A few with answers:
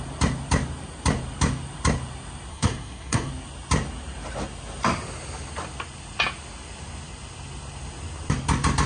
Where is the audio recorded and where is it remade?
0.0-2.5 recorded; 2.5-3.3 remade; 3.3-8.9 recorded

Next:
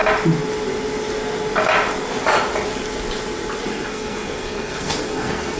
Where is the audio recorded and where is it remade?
0.0-3.7 recorded; 3.7-5.6 remade

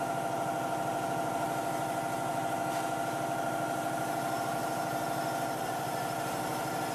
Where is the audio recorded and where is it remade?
0.0-6.9 recorded

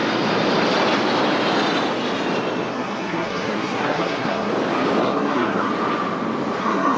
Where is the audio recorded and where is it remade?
0.0-2.7 recorded; 2.7-4.5 remade; 4.5-5.0 recorded; 5.0-5.7 remade; 5.7-6.6 recorded; 6.6-7.0 remade

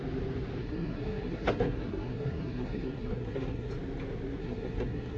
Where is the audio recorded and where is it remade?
0.0-0.6 recorded; 0.6-3.7 remade; 3.7-4.4 recorded; 4.4-5.2 remade

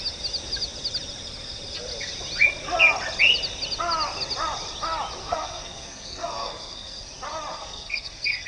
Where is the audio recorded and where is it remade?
0.0-5.2 recorded; 5.2-7.1 remade; 7.1-7.5 recorded; 7.5-8.5 remade

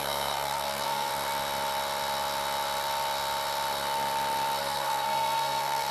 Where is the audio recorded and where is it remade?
0.0-1.1 remade; 1.1-4.6 recorded; 4.6-5.9 remade

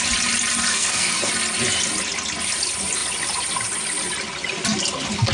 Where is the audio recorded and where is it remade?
0.0-0.7 recorded; 0.7-1.3 remade; 1.3-5.3 recorded